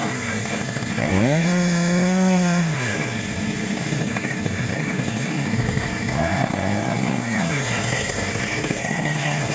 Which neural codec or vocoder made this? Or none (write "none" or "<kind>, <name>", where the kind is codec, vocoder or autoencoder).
codec, SNAC